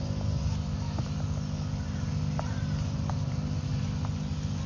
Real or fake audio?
real